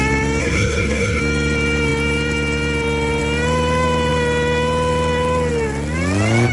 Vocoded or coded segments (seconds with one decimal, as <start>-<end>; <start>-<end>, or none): 0.4-1.2